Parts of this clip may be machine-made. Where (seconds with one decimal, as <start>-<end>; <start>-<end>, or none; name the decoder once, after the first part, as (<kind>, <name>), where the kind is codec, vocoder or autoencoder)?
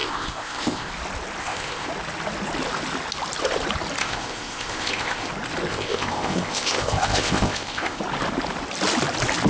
0.0-0.9 (codec, ZipCodec); 1.4-1.9; 4.0-5.3; 5.7-8.0